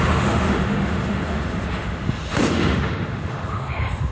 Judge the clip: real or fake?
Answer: fake